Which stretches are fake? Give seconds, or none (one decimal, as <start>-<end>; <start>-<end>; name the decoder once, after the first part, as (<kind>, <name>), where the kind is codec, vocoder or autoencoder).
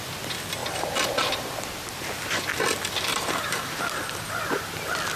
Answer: 3.1-3.8 (vocoder, BigVGAN v2)